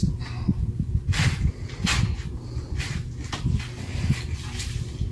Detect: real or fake real